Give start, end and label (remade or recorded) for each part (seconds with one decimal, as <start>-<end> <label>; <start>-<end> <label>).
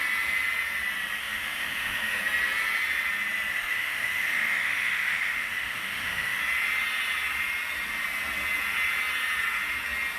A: 0.0-1.2 recorded; 1.2-2.2 remade; 2.2-3.5 recorded; 3.5-6.4 remade; 6.4-10.2 recorded